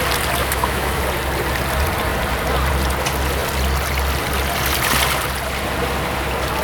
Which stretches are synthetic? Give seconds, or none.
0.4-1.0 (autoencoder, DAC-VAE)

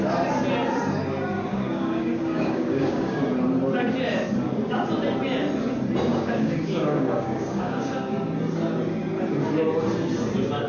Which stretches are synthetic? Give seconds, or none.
1.5-3.2 (codec, DAC); 6.1-7.9